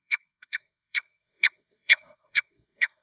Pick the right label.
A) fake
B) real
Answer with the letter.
A